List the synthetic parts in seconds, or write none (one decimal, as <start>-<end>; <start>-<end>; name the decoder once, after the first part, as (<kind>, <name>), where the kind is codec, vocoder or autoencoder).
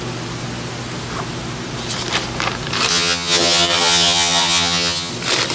2.9-5.1 (vocoder, HiFi-GAN)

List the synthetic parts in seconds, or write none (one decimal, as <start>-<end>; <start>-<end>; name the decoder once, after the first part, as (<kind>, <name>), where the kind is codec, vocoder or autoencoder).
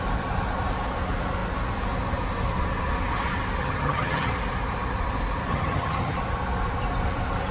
3.6-4.3 (vocoder, HiFi-GAN); 5.5-6.2